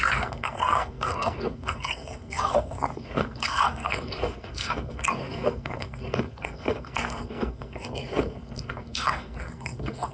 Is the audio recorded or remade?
remade